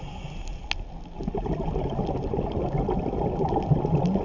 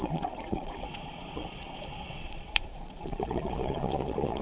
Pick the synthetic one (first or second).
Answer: second